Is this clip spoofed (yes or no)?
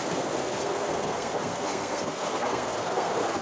yes